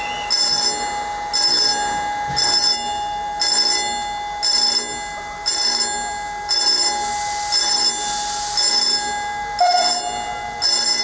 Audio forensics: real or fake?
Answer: real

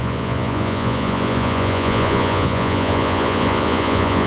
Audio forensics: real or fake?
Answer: fake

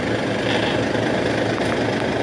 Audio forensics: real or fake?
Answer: real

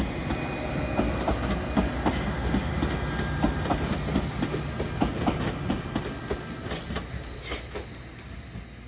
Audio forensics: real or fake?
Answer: real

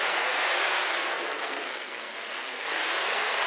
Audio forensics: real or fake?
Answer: fake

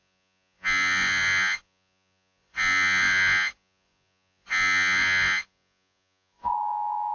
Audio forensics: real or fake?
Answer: fake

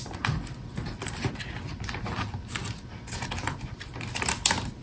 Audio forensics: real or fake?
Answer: real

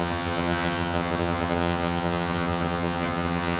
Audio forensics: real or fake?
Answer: fake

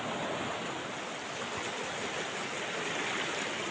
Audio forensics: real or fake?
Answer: real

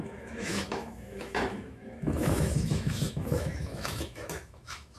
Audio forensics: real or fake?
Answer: fake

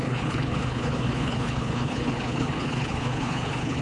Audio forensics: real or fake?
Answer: fake